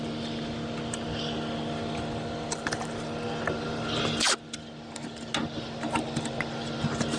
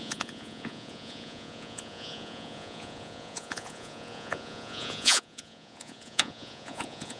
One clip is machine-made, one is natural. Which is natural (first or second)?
first